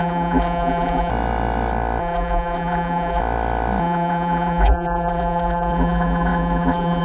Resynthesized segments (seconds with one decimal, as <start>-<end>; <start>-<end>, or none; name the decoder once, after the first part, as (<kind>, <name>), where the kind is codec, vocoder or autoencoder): 0.0-1.1 (vocoder, BigVGAN v2); 2.0-3.2; 3.8-7.0